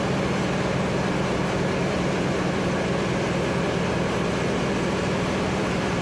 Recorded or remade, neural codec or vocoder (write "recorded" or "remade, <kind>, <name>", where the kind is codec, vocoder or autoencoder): recorded